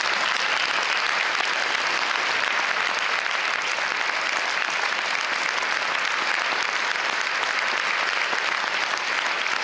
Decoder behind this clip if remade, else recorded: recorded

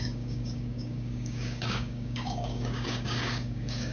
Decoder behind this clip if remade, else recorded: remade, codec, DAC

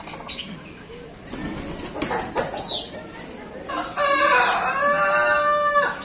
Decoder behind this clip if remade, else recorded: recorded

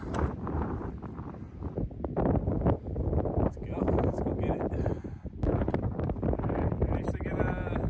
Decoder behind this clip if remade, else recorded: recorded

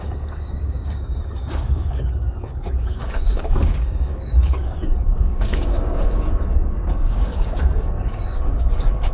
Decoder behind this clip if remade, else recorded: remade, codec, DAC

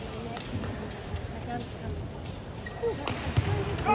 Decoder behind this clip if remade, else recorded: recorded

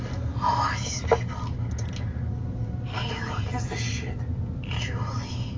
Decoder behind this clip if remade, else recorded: recorded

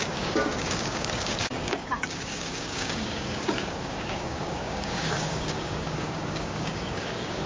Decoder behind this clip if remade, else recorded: remade, codec, DAC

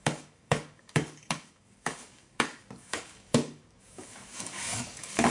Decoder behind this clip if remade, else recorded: remade, codec, DAC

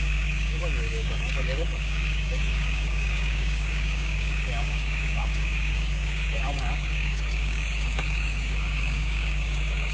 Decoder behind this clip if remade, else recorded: remade, codec, DAC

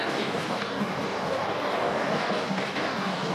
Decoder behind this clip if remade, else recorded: remade, codec, DAC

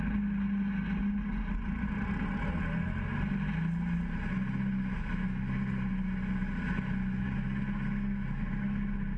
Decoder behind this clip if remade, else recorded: recorded